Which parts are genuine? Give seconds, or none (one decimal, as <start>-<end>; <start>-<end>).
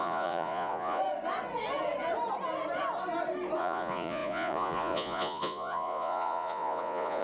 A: 1.0-3.6